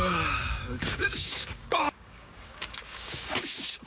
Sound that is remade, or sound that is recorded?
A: remade